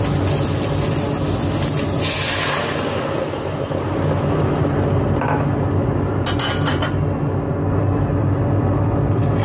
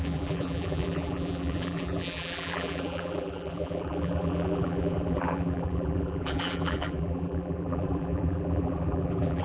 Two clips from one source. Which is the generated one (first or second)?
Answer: second